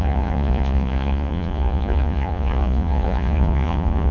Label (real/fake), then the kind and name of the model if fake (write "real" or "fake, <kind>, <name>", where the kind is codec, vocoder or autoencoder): fake, vocoder, Vocos